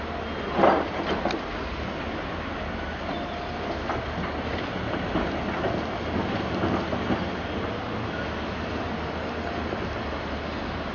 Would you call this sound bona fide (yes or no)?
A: yes